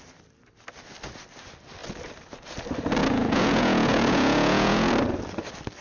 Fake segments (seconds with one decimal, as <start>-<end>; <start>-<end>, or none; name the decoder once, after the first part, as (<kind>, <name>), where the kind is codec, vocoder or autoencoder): 3.0-4.9 (vocoder, Vocos)